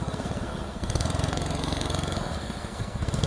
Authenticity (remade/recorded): remade